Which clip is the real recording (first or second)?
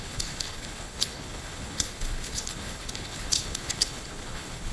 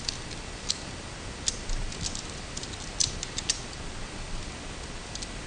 second